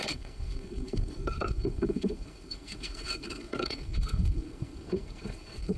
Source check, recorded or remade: remade